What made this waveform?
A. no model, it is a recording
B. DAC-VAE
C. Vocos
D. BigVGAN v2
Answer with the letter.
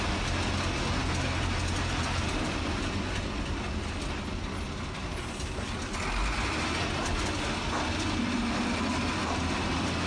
A